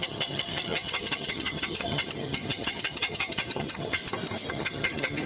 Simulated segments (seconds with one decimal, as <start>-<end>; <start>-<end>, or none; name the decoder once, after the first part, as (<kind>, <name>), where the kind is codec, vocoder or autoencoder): 0.0-4.0 (vocoder, HiFi-GAN); 4.5-5.3